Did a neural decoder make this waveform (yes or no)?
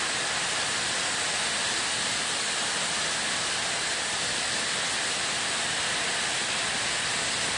no